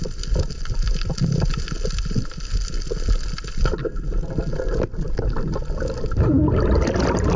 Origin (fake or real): real